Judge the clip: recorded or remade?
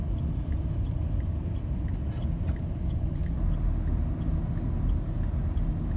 recorded